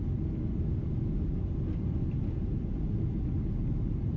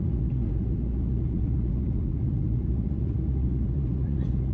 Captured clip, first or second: first